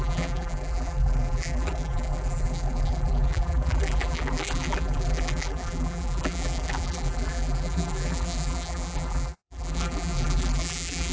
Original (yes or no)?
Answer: no